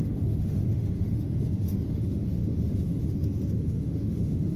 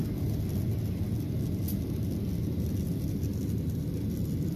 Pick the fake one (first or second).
first